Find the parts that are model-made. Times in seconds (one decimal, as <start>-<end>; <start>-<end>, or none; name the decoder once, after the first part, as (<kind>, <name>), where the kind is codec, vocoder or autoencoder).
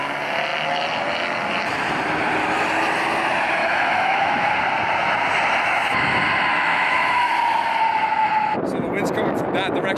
3.6-4.5 (autoencoder, DAC-VAE); 6.5-7.3